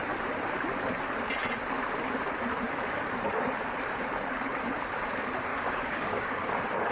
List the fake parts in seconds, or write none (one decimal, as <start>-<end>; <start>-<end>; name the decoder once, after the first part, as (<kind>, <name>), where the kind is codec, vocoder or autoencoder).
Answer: 5.5-6.5 (codec, DAC)